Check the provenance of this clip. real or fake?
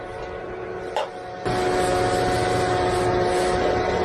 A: real